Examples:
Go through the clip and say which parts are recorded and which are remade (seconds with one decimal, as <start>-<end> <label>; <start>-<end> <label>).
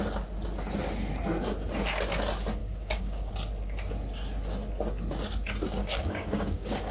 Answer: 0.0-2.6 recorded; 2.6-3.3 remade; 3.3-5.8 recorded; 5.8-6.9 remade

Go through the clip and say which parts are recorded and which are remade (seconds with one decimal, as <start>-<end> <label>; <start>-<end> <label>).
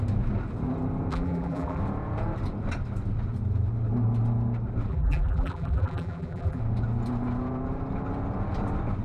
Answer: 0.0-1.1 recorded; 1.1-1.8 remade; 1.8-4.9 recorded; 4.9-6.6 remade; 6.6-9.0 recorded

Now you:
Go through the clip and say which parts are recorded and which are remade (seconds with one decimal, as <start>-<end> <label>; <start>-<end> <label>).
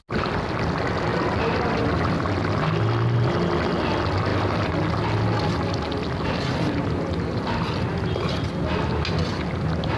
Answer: 0.0-10.0 recorded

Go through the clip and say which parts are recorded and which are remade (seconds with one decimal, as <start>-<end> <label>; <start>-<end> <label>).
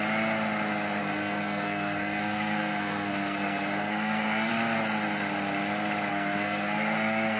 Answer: 0.0-1.0 recorded; 1.0-4.5 remade; 4.5-6.1 recorded; 6.1-7.4 remade